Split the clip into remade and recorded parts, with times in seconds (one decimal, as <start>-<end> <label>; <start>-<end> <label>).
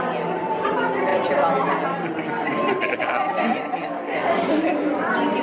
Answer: 0.0-3.8 recorded; 3.8-4.9 remade; 4.9-5.4 recorded